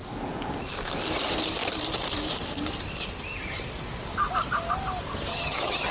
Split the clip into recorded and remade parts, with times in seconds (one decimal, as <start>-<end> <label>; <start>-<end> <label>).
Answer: 0.0-5.3 recorded; 5.3-5.9 remade